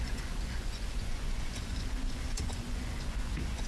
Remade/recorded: remade